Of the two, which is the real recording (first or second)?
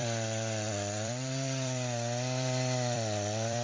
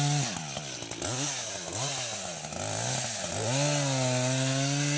second